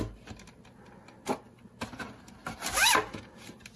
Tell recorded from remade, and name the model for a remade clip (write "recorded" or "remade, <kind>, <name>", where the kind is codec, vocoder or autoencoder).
recorded